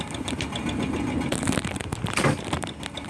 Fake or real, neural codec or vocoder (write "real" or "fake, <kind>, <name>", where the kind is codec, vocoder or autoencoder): real